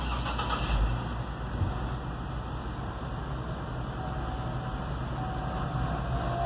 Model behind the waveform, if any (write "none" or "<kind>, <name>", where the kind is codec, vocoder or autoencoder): none